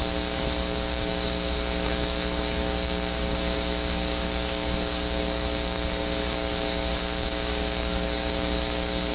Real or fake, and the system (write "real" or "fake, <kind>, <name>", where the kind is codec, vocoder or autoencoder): fake, codec, DAC